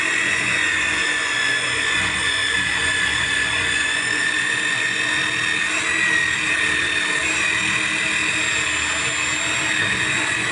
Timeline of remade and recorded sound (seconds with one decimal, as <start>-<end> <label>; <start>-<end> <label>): 0.0-5.2 remade; 5.2-9.8 recorded; 9.8-10.5 remade